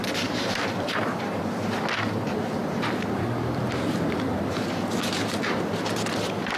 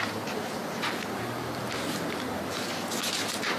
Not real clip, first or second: first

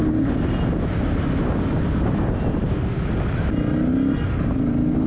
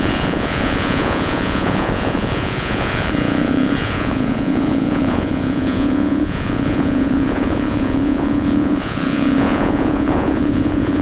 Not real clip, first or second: second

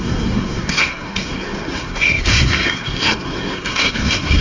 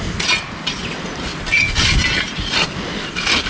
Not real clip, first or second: first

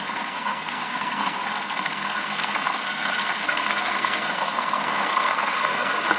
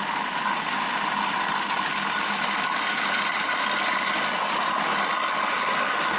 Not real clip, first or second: first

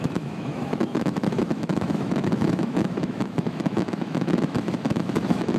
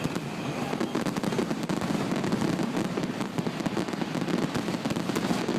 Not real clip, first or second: first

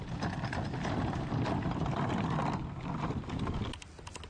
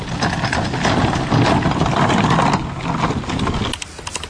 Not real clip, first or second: first